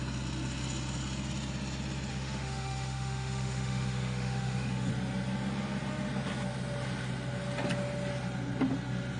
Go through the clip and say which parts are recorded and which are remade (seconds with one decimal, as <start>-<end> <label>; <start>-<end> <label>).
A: 0.0-2.1 recorded; 2.1-4.9 remade; 4.9-9.2 recorded